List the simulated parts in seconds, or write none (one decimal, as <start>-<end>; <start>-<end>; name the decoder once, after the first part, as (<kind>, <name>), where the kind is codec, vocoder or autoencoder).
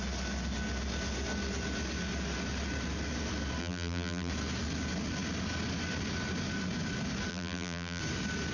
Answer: 3.6-4.3 (vocoder, BigVGAN v2); 7.3-8.0